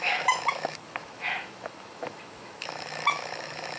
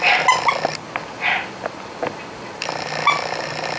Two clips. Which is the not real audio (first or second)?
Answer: first